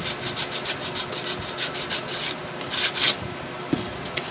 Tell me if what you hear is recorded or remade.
recorded